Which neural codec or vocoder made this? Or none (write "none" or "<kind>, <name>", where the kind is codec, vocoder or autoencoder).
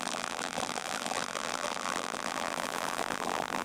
vocoder, BigVGAN v2